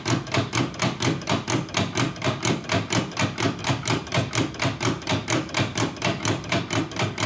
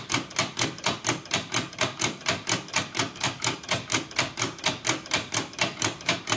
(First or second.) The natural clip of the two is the first